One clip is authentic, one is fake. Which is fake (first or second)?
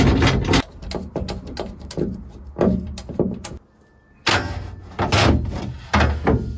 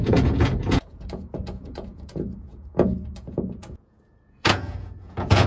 second